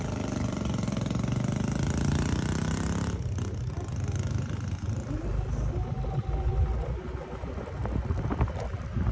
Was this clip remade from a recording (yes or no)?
no